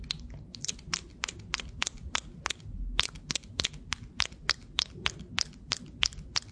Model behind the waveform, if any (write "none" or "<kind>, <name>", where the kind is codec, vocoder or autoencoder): none